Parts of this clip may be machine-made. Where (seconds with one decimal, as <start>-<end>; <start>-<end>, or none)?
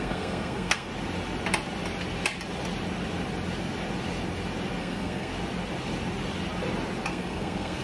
0.0-0.9; 4.8-5.3; 7.1-7.8